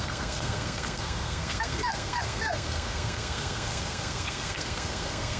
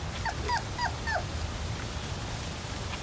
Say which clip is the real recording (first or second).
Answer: second